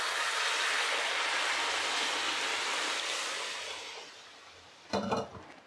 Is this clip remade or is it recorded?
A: recorded